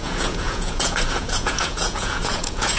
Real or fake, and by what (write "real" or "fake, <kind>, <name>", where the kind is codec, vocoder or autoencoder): fake, vocoder, Vocos